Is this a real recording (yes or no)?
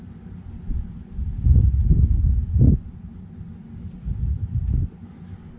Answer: yes